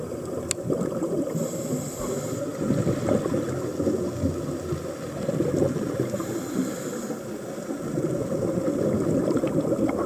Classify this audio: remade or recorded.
recorded